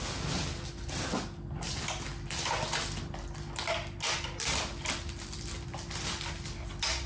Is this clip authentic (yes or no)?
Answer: yes